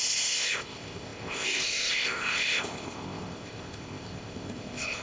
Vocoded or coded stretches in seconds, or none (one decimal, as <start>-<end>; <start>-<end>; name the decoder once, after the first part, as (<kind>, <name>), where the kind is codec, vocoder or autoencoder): 0.0-5.0 (codec, ZipCodec)